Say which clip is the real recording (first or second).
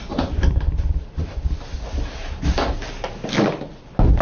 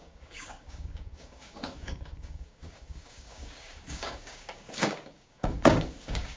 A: first